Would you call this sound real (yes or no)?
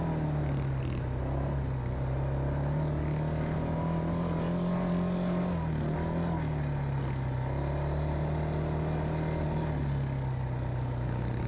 yes